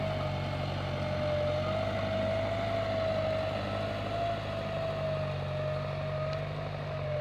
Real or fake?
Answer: real